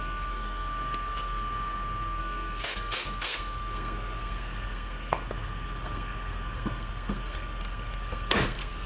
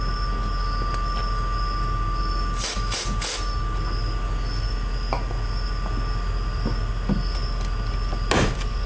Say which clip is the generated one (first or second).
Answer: first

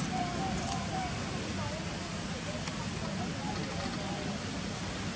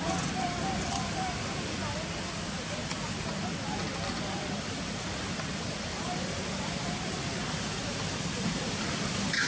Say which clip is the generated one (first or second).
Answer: second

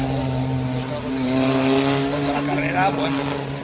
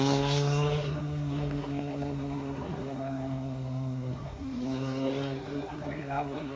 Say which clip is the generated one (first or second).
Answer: second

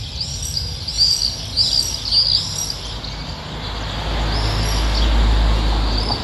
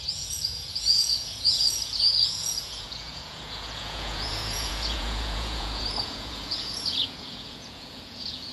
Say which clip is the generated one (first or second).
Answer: second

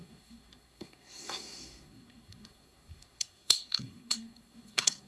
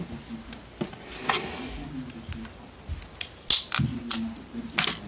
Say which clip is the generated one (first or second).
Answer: first